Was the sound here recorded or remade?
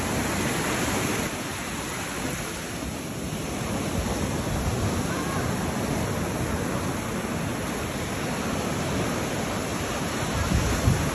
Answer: recorded